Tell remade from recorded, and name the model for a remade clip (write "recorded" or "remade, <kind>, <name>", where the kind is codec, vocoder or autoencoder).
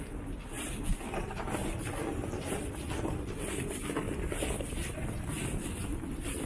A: remade, vocoder, BigVGAN v2